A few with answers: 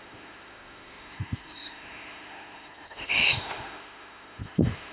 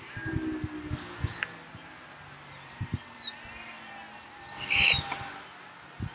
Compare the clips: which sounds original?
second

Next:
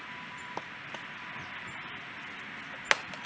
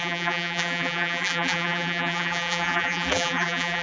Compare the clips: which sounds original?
first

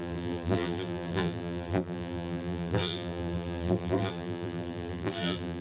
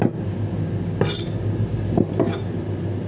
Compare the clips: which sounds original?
second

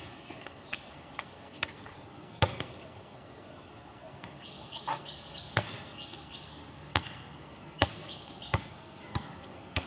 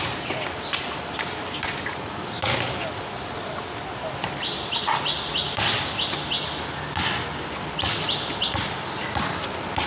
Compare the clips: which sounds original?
second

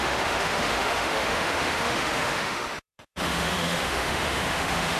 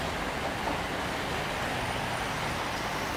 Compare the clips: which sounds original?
second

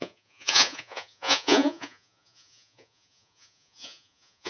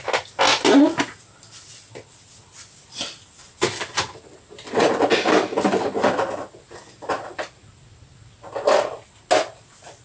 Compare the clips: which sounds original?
second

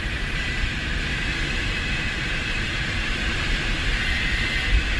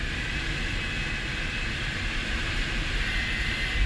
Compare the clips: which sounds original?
second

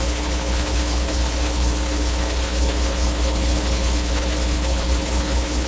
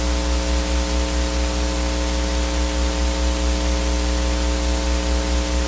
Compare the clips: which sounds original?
second